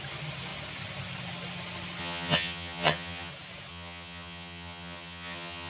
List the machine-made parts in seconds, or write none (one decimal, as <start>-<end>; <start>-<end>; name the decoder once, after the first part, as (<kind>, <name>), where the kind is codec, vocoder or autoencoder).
2.0-3.3 (vocoder, HiFi-GAN); 3.7-5.7

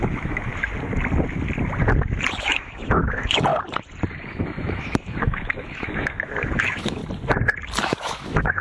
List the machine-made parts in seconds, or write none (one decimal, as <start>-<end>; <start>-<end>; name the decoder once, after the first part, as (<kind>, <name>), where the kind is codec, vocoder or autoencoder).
0.0-0.5 (autoencoder, DAC-VAE); 2.4-3.5; 4.1-7.0; 7.8-8.6

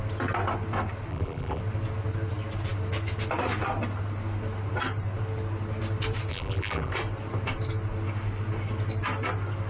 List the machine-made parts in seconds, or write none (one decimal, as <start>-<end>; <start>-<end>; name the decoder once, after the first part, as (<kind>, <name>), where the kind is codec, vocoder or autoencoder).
1.1-1.6 (vocoder, BigVGAN v2); 6.3-6.9

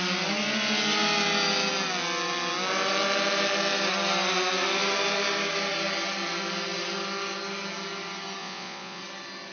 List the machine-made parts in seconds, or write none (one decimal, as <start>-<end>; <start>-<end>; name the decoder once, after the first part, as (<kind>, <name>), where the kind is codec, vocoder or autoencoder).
8.4-9.0 (vocoder, Vocos)

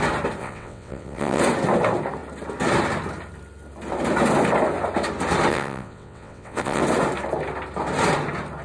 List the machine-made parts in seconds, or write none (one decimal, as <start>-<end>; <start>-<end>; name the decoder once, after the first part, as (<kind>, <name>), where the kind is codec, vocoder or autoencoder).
0.4-1.4 (vocoder, WaveNeXt); 5.5-6.8

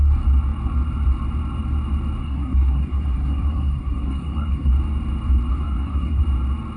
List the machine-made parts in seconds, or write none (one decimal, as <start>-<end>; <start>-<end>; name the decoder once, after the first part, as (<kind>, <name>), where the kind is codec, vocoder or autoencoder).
2.2-4.7 (codec, SNAC); 5.5-6.2